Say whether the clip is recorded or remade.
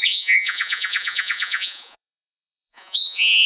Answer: remade